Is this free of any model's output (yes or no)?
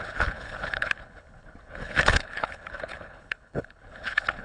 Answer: no